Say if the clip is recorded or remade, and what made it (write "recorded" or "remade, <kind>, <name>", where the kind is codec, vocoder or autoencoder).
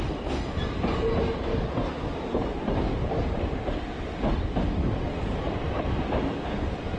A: recorded